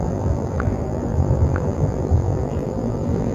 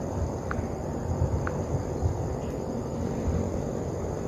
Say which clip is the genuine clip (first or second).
second